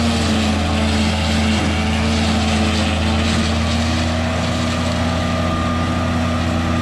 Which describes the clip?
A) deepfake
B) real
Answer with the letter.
B